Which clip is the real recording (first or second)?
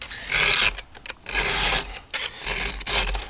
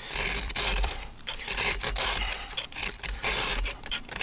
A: first